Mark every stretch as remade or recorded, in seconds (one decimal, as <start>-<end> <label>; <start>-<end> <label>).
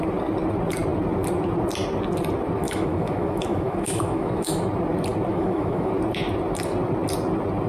0.0-2.6 recorded; 2.6-4.6 remade; 4.6-5.3 recorded; 5.3-5.9 remade; 5.9-7.7 recorded